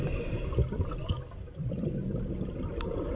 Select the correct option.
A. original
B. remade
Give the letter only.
A